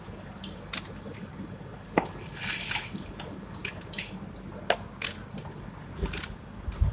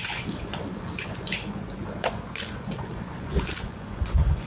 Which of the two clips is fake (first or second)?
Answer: second